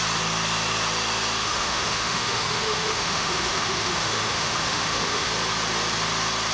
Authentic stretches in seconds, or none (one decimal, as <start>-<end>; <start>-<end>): 0.0-1.4; 5.3-6.5